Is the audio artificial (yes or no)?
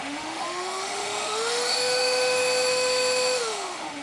yes